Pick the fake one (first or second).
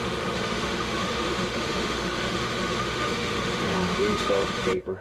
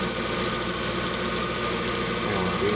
first